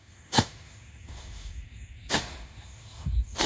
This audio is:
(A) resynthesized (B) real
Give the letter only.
A